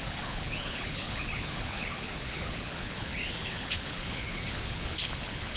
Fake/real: fake